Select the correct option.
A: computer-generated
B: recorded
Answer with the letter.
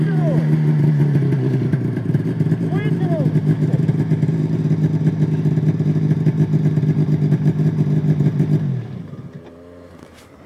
A